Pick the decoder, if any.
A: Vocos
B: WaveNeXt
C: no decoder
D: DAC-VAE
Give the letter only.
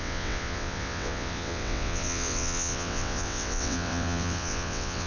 B